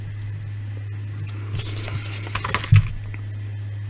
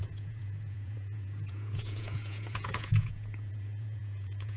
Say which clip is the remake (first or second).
second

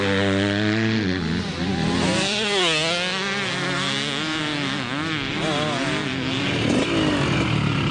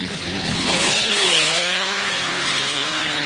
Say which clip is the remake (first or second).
second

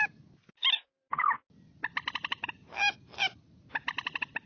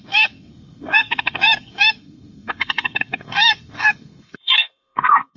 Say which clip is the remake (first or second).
second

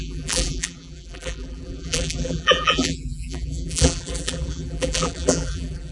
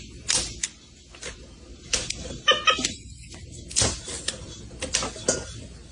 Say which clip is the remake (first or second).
first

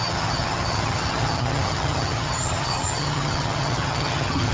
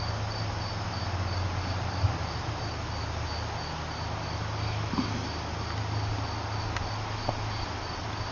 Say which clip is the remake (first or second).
first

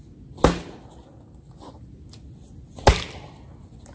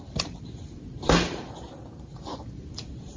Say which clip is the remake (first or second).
second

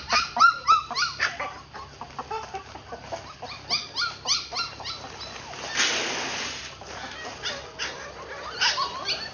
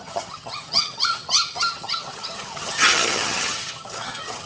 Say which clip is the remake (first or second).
second